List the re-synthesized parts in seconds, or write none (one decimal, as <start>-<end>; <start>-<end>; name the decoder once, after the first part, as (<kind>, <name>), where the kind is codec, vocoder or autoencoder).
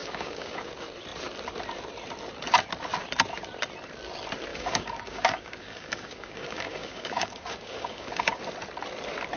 0.0-0.7 (codec, DAC); 4.5-8.4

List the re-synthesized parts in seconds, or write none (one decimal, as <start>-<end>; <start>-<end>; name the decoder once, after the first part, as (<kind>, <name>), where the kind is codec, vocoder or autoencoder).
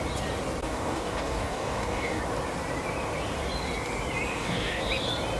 0.6-2.2 (codec, DAC); 4.3-4.8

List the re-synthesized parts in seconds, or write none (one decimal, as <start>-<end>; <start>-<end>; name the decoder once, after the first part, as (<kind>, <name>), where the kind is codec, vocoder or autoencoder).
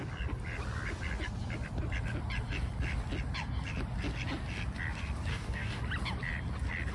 5.3-5.8 (codec, DAC)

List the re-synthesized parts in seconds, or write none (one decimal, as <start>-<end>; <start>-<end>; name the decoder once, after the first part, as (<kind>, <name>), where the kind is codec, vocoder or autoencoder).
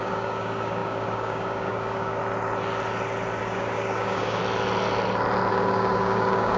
0.0-2.2 (codec, DAC); 3.4-4.4; 5.5-6.6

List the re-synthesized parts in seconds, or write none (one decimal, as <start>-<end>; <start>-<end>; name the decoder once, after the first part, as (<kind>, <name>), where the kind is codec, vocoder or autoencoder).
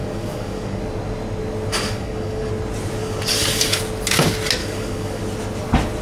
0.0-0.8 (codec, DAC); 1.7-2.5; 3.0-3.8; 4.6-5.2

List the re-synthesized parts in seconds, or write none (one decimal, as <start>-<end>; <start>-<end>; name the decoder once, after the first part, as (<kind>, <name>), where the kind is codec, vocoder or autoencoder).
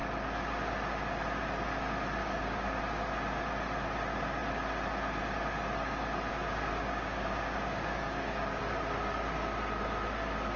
2.2-2.8 (codec, DAC); 6.3-8.6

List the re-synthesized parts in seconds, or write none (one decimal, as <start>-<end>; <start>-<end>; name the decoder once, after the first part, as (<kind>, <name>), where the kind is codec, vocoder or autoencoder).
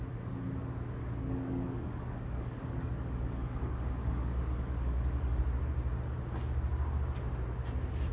1.0-5.4 (codec, DAC)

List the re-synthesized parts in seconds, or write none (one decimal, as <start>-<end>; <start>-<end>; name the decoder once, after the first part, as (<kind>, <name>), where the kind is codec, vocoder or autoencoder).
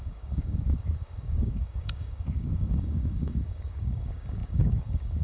0.0-5.2 (codec, DAC)